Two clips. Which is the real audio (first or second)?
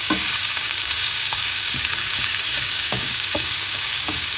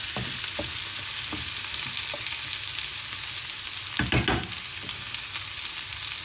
second